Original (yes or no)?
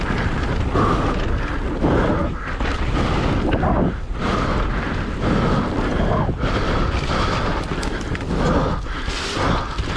yes